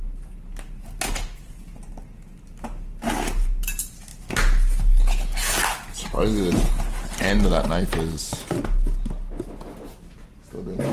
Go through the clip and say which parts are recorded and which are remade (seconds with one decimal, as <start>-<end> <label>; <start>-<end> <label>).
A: 0.0-10.9 recorded